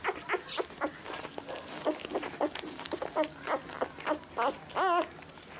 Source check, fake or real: real